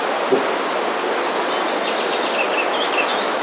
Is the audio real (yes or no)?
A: yes